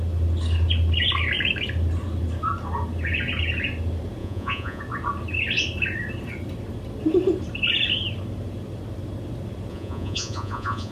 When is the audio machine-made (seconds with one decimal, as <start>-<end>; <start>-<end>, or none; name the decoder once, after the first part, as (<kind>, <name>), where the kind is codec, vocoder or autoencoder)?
4.2-4.8 (vocoder, Vocos); 9.7-10.9